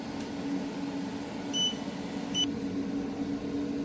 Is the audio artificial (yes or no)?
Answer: no